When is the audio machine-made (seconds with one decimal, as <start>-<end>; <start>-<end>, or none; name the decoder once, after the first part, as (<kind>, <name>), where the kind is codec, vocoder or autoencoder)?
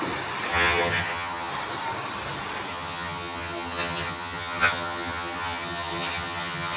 0.5-1.5 (vocoder, HiFi-GAN); 2.7-6.8